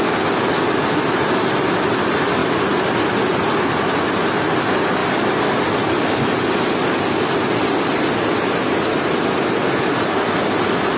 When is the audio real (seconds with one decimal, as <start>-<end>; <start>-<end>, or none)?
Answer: 0.0-11.0